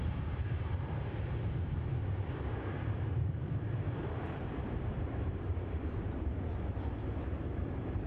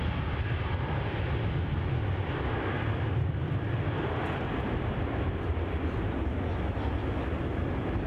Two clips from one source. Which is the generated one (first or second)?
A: first